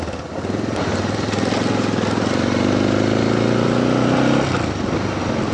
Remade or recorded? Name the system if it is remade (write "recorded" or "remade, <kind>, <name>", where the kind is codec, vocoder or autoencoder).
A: recorded